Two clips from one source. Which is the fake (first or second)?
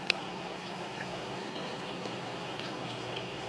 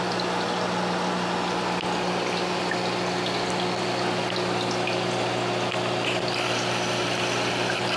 first